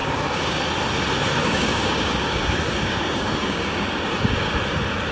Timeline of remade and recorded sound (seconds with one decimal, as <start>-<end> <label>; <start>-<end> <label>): 0.0-0.6 remade; 0.6-1.4 recorded; 1.4-4.5 remade; 4.5-5.1 recorded